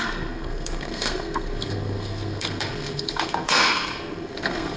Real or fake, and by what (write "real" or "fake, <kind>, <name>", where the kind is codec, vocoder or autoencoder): fake, codec, SNAC